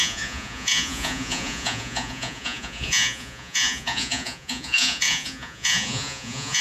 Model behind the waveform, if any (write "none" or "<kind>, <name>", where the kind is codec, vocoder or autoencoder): vocoder, Vocos